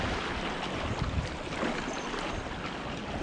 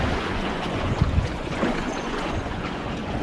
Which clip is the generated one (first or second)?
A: second